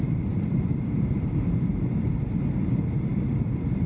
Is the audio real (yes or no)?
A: no